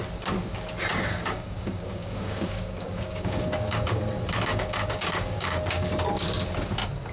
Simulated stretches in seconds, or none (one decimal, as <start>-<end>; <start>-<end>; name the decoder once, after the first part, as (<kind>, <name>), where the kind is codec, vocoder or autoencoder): 0.9-4.0 (codec, DAC); 4.5-5.9